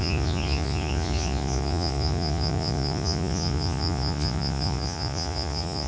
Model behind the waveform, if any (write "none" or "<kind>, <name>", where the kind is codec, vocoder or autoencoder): vocoder, Vocos